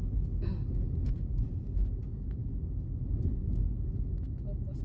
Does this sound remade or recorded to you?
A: recorded